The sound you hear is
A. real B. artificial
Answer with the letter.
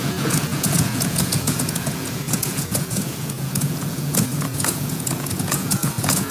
B